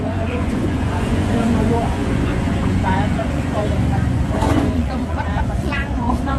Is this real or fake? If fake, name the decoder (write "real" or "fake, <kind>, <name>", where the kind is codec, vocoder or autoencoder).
fake, vocoder, Vocos